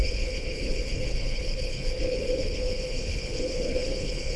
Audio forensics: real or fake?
fake